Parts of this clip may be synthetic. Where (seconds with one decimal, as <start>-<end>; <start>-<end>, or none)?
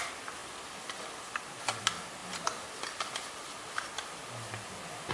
none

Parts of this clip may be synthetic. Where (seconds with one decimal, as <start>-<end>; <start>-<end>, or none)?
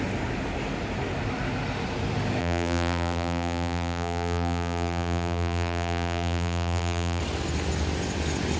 2.4-7.2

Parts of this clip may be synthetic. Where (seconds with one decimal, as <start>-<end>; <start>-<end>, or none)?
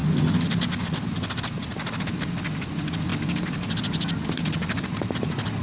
3.1-4.9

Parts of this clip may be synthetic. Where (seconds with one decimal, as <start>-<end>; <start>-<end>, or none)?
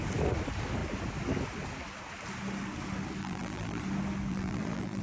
3.2-3.8; 4.3-5.0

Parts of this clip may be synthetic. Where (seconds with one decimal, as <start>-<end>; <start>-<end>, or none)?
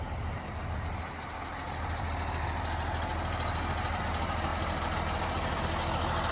4.5-5.6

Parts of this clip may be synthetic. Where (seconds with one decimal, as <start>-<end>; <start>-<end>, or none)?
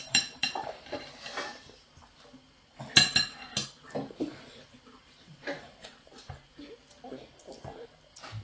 0.0-2.1; 4.9-6.3